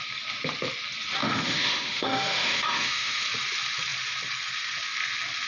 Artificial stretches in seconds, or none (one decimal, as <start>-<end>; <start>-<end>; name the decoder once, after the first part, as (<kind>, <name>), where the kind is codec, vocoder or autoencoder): 1.2-3.2 (autoencoder, DAC-VAE)